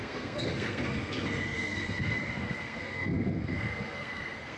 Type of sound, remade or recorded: remade